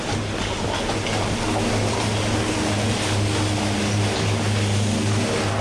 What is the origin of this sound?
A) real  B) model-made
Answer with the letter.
A